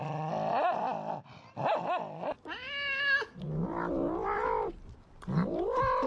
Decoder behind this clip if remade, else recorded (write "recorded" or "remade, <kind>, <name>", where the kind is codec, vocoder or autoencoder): recorded